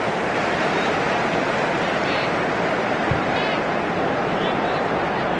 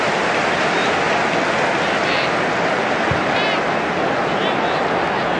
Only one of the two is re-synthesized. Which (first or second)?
first